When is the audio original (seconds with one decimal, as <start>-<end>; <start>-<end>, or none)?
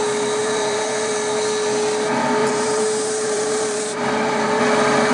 0.0-0.4; 1.1-2.4; 4.6-5.1